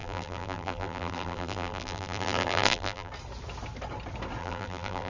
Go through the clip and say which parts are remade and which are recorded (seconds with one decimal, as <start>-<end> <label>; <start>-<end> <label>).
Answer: 0.0-3.1 remade; 3.1-4.4 recorded; 4.4-5.1 remade